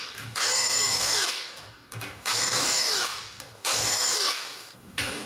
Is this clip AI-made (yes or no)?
yes